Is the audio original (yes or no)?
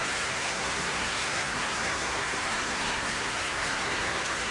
no